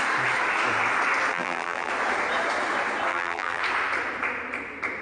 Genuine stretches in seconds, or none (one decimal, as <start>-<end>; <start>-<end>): 0.0-1.3; 1.9-3.1; 3.6-5.0